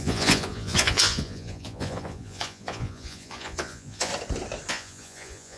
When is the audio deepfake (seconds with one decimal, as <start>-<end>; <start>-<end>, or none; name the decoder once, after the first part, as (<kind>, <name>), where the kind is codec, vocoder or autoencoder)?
0.0-4.1 (vocoder, Vocos); 4.7-5.6